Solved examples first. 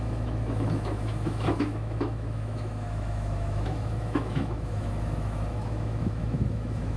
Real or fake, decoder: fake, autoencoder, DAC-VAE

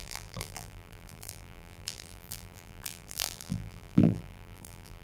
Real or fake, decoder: fake, vocoder, BigVGAN v2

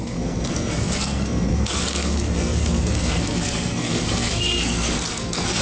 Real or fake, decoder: fake, codec, SNAC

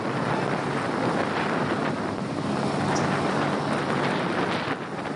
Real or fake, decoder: real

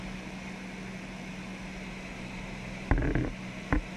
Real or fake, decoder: real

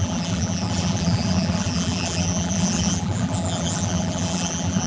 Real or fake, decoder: fake, vocoder, BigVGAN v2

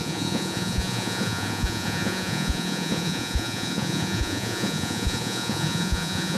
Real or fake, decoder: fake, vocoder, Vocos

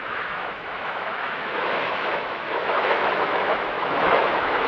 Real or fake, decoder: fake, autoencoder, DAC-VAE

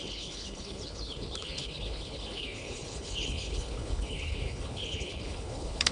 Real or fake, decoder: fake, codec, HILCodec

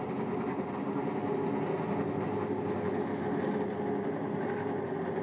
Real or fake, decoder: real